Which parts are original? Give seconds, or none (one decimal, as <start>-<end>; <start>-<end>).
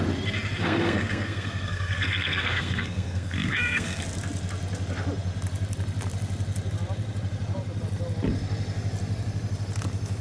0.0-0.6; 4.0-10.2